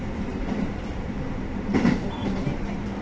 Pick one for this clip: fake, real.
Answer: fake